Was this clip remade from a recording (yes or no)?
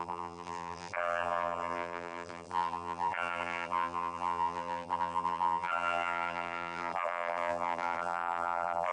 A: yes